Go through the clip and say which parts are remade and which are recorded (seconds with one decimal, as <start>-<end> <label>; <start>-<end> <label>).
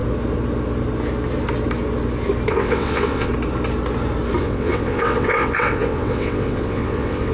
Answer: 0.0-2.5 recorded; 2.5-3.3 remade; 3.3-4.4 recorded; 4.4-7.3 remade